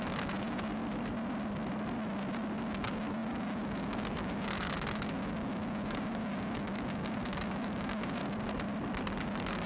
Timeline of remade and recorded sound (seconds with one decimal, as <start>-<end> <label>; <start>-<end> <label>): 0.0-0.8 remade; 0.8-2.6 recorded; 2.6-8.2 remade; 8.2-9.2 recorded; 9.2-9.7 remade